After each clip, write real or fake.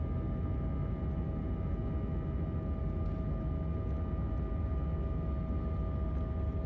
real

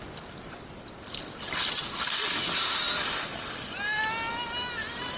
real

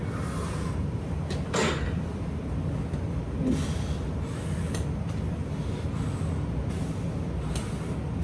real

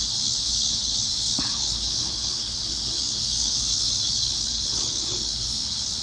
fake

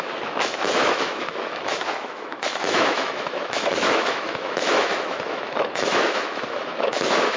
fake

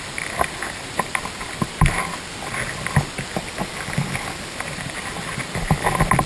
real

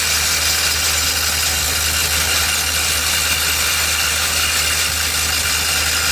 real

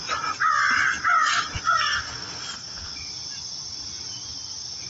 real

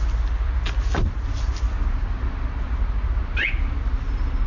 real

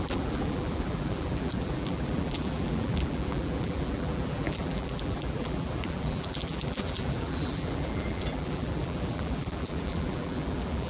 fake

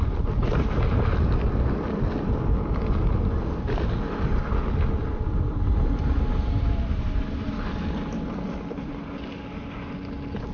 real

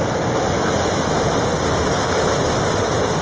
real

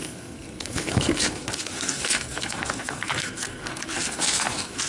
fake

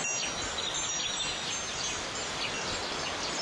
real